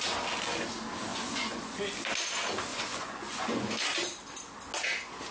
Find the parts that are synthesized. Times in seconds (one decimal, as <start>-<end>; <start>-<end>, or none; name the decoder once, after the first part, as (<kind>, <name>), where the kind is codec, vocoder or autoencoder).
1.1-1.8 (vocoder, Vocos); 2.7-3.7